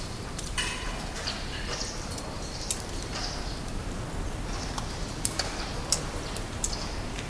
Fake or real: real